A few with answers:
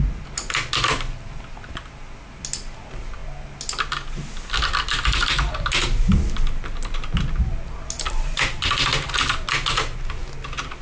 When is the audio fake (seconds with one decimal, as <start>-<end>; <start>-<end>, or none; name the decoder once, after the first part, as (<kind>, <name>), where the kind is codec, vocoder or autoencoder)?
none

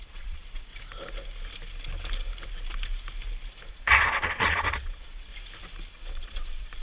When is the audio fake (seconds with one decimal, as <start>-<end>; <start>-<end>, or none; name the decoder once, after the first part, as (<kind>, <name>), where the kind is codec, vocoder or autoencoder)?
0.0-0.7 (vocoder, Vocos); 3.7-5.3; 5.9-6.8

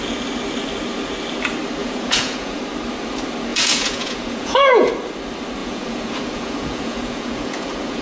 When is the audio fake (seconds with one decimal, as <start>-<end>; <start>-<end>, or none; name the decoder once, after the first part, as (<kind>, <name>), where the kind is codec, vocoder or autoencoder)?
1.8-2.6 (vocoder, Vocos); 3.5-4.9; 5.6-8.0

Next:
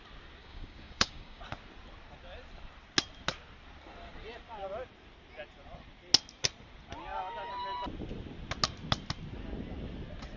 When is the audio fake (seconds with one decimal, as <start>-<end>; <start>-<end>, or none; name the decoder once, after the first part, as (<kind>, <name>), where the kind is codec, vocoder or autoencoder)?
0.4-1.4 (codec, DAC)

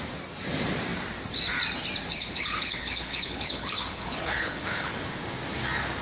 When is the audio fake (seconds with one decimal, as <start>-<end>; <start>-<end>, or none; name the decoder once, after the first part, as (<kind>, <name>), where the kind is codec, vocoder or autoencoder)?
2.1-4.9 (codec, HILCodec)

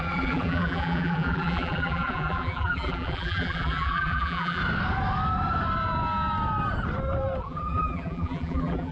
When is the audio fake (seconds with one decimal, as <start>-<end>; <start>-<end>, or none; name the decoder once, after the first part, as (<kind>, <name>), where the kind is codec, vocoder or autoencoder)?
0.0-4.6 (vocoder, BigVGAN v2); 7.4-8.9